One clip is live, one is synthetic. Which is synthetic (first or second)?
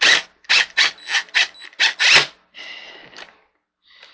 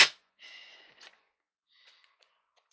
second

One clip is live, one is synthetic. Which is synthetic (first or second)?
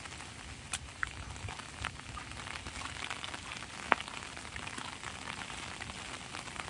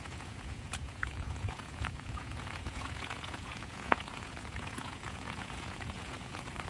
second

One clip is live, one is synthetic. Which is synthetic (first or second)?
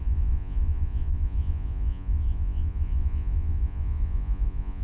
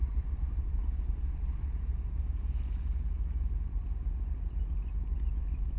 first